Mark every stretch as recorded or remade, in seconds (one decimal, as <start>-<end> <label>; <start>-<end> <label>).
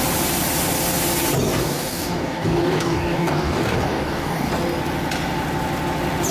0.0-1.6 recorded; 1.6-4.5 remade; 4.5-6.3 recorded